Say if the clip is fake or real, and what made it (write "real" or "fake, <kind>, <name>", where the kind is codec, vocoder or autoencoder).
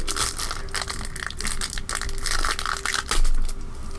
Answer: real